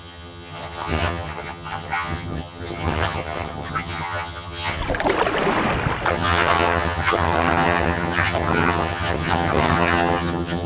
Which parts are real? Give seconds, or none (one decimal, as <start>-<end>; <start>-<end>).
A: 4.8-6.1